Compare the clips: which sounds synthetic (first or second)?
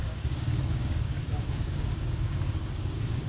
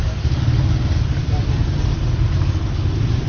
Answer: first